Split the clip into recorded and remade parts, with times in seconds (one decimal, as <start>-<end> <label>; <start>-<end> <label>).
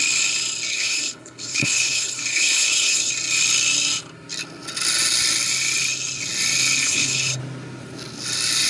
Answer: 0.0-0.7 recorded; 0.7-3.1 remade; 3.1-6.8 recorded; 6.8-7.4 remade; 7.4-8.7 recorded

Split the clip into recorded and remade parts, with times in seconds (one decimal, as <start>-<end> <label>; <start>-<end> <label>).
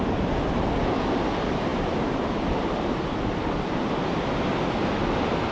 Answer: 0.0-1.7 recorded; 1.7-2.5 remade; 2.5-4.8 recorded; 4.8-5.5 remade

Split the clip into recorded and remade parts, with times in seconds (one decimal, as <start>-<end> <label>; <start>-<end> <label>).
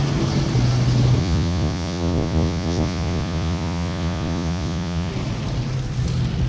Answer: 0.0-1.2 recorded; 1.2-5.1 remade; 5.1-6.5 recorded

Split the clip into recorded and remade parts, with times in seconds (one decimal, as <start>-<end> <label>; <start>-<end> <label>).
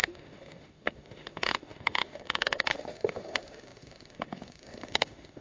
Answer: 0.0-5.4 remade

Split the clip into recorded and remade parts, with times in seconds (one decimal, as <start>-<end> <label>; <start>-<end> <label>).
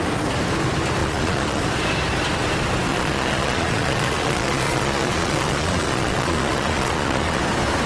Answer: 0.0-1.0 recorded; 1.0-1.6 remade; 1.6-2.9 recorded; 2.9-7.4 remade; 7.4-7.9 recorded